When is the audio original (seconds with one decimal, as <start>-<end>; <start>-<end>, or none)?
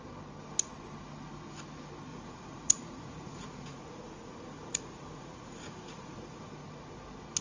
0.0-2.1; 6.5-7.4